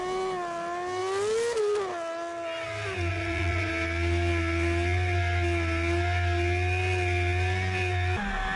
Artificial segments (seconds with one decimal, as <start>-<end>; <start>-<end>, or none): 3.1-3.7